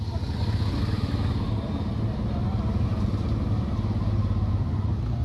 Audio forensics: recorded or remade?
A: recorded